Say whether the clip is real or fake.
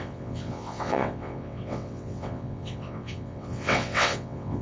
fake